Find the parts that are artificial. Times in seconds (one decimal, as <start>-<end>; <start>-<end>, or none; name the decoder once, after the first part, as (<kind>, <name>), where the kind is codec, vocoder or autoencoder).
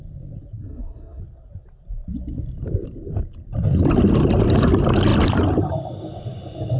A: 0.6-1.2 (codec, SNAC)